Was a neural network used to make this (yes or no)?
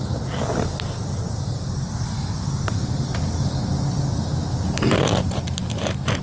no